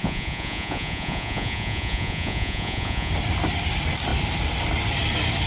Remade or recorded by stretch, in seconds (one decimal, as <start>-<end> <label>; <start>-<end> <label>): 0.0-3.1 remade; 3.1-5.5 recorded